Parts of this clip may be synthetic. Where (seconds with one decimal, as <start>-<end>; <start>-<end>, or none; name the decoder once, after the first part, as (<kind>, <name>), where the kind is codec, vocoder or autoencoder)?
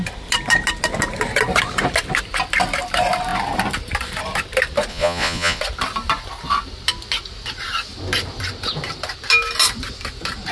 4.9-5.6 (vocoder, Vocos)